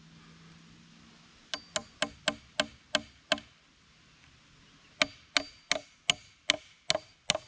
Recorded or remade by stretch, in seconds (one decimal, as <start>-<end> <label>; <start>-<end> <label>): 0.0-7.5 recorded